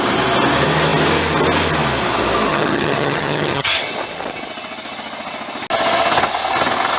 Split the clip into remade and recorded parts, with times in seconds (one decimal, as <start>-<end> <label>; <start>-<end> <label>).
0.0-2.5 recorded; 2.5-3.8 remade; 3.8-7.0 recorded